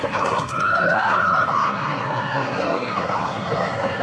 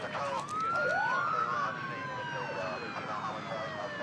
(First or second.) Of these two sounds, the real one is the second